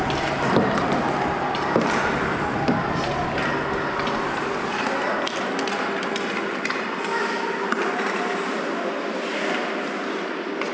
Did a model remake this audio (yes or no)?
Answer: no